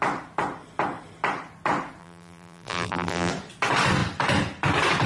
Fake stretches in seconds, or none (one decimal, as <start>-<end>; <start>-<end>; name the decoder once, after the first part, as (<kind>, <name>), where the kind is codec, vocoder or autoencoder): 2.0-3.3 (vocoder, BigVGAN v2)